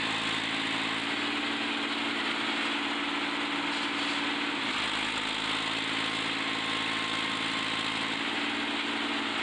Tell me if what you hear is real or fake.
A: real